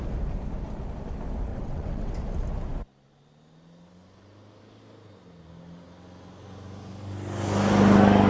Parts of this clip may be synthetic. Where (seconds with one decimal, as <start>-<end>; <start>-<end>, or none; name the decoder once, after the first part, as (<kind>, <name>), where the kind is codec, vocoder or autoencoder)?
1.5-2.1 (vocoder, WaveNeXt)